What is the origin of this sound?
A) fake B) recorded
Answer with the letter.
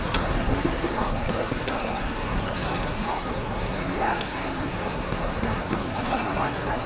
A